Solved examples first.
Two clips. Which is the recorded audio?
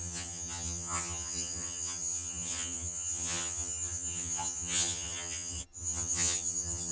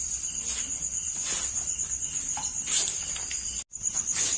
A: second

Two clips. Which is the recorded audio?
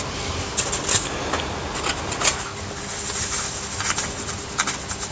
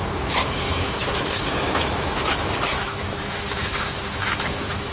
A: first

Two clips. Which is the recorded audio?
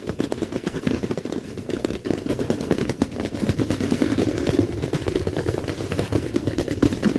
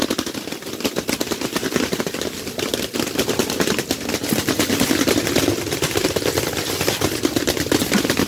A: second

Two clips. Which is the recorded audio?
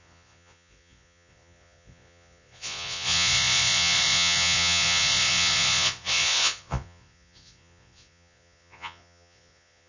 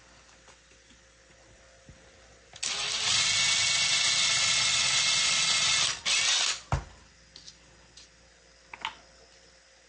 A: second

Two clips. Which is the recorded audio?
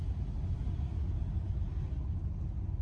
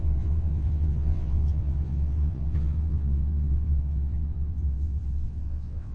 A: first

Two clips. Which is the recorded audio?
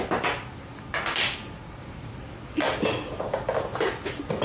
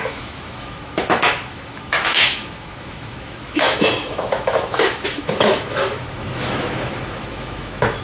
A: first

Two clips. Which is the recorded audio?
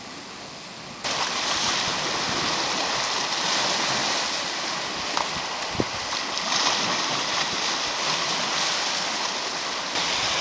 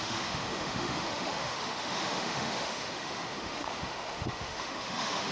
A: first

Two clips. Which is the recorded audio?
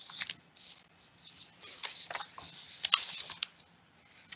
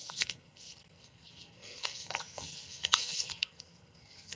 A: first